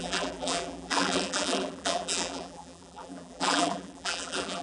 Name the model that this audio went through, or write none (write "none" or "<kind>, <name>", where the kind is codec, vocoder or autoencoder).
vocoder, BigVGAN v2